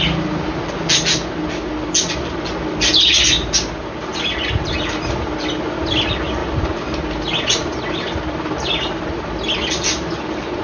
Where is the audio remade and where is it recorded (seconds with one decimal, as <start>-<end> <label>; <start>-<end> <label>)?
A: 0.0-10.6 recorded